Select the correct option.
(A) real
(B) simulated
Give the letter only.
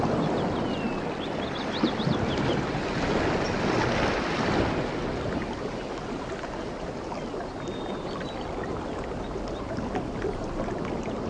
A